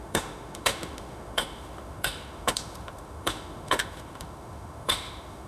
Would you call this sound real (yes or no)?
no